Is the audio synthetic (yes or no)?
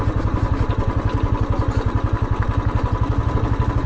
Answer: no